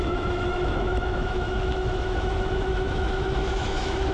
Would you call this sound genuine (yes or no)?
no